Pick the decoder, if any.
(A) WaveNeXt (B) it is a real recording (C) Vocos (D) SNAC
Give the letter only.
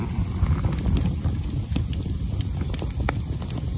B